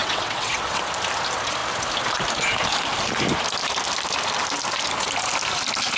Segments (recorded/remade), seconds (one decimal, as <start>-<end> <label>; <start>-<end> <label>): 0.0-0.8 remade; 0.8-6.0 recorded

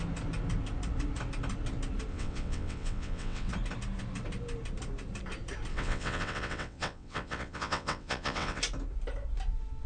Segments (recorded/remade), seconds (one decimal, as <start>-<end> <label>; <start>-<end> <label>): 0.0-2.1 recorded; 2.1-3.5 remade; 3.5-5.7 recorded; 5.7-8.6 remade; 8.6-9.9 recorded

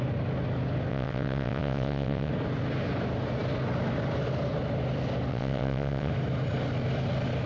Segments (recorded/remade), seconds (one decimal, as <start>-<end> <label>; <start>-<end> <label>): 0.0-0.9 recorded; 0.9-2.3 remade; 2.3-5.3 recorded; 5.3-6.1 remade; 6.1-7.5 recorded

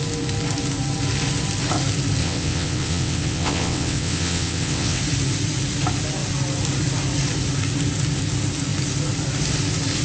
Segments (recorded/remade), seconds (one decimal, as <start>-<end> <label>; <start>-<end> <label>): 0.0-2.2 recorded; 2.2-5.0 remade; 5.0-10.0 recorded

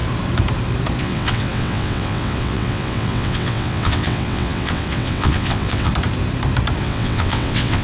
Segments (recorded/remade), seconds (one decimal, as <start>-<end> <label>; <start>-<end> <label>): 0.0-1.0 recorded; 1.0-5.9 remade; 5.9-6.8 recorded; 6.8-7.8 remade

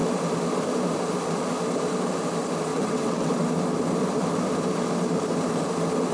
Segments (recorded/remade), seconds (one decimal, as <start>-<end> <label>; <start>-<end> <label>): 0.0-2.7 recorded; 2.7-3.3 remade; 3.3-6.1 recorded

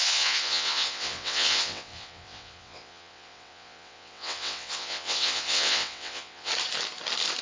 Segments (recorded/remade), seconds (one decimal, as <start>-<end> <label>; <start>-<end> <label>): 0.0-6.5 remade; 6.5-7.4 recorded

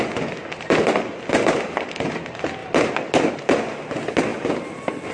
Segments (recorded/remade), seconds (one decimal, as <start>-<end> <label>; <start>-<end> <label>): 0.0-5.1 recorded